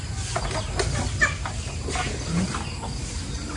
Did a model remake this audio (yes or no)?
no